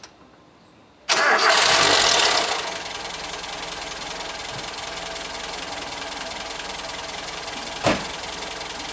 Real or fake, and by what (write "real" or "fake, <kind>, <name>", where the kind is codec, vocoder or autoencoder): real